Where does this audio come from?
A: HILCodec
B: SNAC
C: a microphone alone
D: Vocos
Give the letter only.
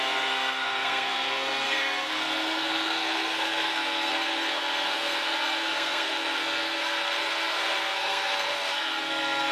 B